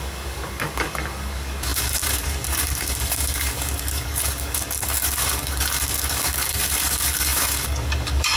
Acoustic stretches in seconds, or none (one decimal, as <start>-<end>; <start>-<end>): none